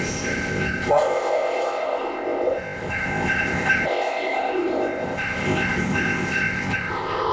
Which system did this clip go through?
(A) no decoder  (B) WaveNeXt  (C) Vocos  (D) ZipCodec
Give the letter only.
D